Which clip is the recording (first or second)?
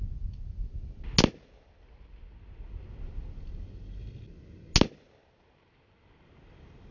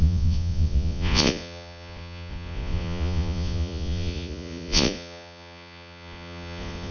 first